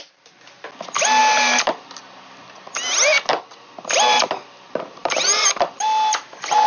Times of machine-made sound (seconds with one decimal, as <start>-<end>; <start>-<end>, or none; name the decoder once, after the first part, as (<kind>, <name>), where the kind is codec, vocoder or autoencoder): 5.0-5.7 (vocoder, BigVGAN v2)